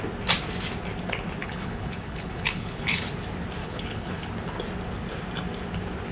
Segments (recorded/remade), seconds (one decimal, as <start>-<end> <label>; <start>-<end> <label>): 0.0-1.4 recorded; 1.4-3.1 remade; 3.1-3.6 recorded; 3.6-4.3 remade; 4.3-6.1 recorded